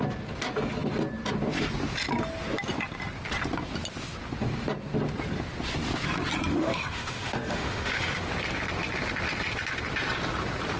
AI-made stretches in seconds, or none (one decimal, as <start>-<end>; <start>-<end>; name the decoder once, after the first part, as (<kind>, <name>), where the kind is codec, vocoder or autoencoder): 6.5-8.3 (autoencoder, DAC-VAE)